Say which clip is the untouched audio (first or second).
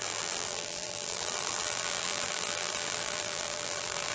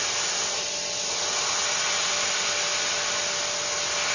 second